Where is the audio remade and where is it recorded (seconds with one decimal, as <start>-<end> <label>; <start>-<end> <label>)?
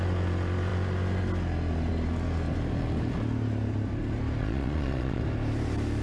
0.0-4.4 recorded; 4.4-5.2 remade; 5.2-6.0 recorded